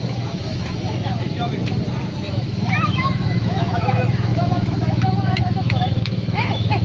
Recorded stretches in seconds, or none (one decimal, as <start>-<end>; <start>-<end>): 1.5-2.3